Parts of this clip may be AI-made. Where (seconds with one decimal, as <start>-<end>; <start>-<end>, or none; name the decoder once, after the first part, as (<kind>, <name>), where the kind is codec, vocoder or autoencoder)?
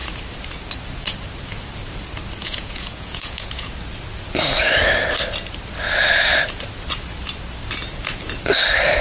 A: 2.4-3.7 (vocoder, Vocos)